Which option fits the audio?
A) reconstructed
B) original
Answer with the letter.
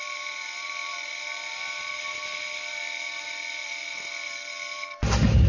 B